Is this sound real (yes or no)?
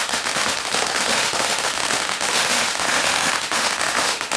no